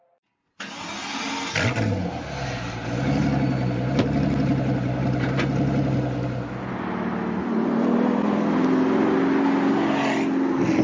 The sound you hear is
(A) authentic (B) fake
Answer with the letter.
A